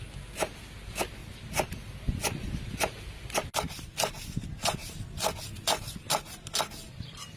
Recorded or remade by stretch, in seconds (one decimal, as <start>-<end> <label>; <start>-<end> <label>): 0.0-1.2 recorded; 1.2-3.2 remade; 3.2-7.4 recorded